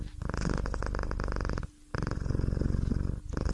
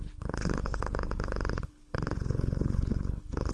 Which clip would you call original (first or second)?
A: first